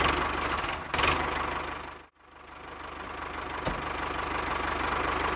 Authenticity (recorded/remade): recorded